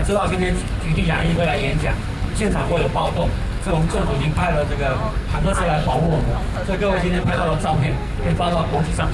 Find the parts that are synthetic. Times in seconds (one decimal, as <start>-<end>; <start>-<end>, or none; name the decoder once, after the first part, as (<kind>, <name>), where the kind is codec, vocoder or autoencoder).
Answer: 0.0-4.4 (codec, SNAC); 5.1-6.3; 7.2-9.1

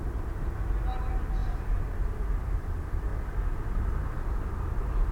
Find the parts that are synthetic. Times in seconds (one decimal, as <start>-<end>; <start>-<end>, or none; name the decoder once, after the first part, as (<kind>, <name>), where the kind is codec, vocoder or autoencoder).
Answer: none